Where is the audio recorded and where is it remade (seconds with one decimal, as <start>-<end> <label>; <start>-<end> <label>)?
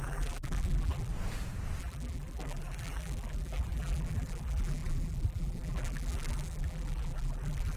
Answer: 0.0-1.1 remade; 1.1-1.8 recorded; 1.8-7.8 remade